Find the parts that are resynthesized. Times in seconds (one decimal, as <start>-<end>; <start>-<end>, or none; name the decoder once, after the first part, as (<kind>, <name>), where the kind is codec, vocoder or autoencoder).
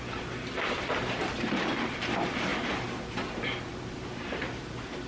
none